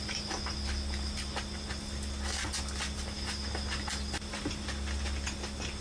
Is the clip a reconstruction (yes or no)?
no